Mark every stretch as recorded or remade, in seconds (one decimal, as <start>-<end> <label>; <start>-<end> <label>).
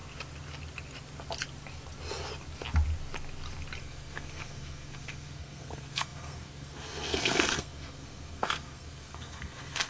0.0-3.8 recorded; 3.8-9.9 remade